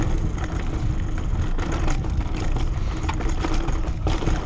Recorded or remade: recorded